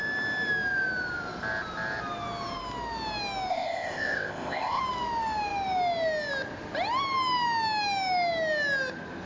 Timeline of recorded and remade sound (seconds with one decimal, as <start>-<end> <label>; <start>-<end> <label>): 0.0-3.5 recorded; 3.5-4.8 remade; 4.8-9.3 recorded